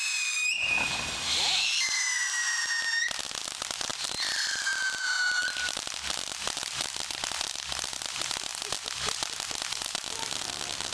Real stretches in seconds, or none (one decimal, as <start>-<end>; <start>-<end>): 0.0-10.9